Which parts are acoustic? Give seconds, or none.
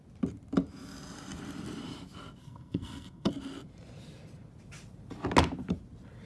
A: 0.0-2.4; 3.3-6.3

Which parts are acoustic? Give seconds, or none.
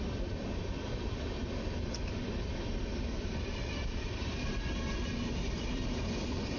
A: 0.0-6.6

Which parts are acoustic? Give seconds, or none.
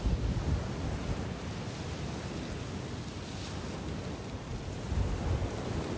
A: 0.0-6.0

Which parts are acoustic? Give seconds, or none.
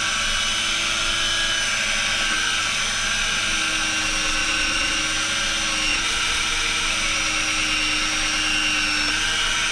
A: 0.0-4.4; 5.0-5.9; 6.4-9.7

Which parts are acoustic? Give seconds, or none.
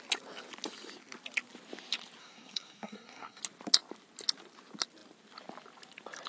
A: 0.0-2.2; 3.4-6.3